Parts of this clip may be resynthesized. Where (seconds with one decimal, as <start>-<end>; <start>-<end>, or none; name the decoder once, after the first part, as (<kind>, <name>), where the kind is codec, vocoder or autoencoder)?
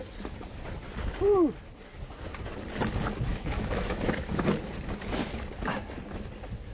3.3-4.3 (autoencoder, DAC-VAE)